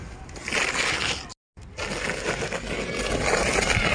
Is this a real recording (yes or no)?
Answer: yes